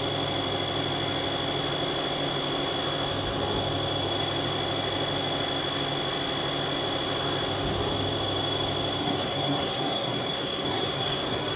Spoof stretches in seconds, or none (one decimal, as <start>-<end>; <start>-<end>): 9.0-11.6